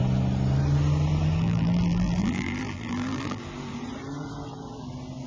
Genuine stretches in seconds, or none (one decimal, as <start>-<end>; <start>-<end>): 0.0-1.4; 3.4-5.3